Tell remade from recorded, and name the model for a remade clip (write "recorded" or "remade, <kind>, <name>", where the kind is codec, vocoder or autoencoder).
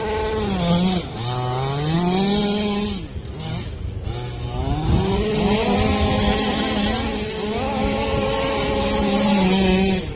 recorded